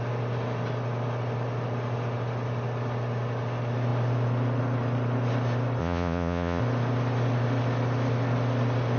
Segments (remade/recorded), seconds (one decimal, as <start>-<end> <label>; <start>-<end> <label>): 0.0-5.8 recorded; 5.8-6.6 remade; 6.6-9.0 recorded